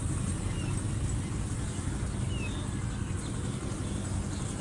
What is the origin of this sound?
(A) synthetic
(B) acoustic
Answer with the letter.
B